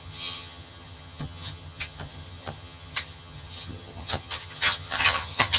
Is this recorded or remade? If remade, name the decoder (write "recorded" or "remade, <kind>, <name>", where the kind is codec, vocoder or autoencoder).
remade, vocoder, HiFi-GAN